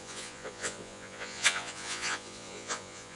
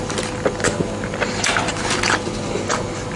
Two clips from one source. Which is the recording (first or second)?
second